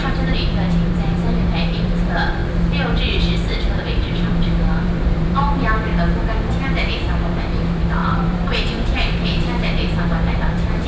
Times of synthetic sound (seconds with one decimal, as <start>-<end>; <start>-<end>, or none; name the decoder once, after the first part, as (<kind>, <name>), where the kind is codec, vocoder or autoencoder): 0.0-2.4 (vocoder, BigVGAN v2); 3.8-5.9; 6.7-10.9

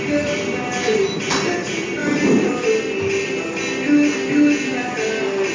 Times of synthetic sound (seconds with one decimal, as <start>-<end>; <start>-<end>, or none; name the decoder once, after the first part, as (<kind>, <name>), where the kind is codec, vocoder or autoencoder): none

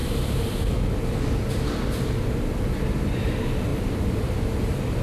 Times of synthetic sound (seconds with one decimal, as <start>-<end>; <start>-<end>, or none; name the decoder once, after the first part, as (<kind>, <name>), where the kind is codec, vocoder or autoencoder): 3.7-4.3 (vocoder, BigVGAN v2)

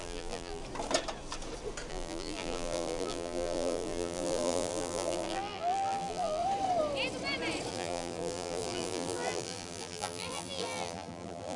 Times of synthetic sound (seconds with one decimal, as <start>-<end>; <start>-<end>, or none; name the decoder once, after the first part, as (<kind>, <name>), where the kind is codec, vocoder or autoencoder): 0.0-0.6 (vocoder, BigVGAN v2); 1.9-6.4; 7.7-11.6

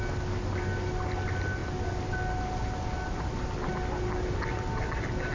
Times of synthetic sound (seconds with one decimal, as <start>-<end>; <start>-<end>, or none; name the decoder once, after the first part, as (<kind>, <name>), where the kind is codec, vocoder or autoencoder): none